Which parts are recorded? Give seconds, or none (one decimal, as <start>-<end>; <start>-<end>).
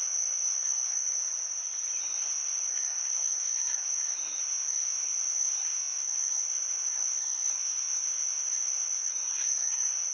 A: 1.2-2.0